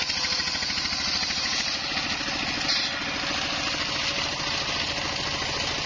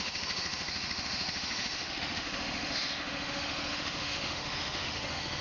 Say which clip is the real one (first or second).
first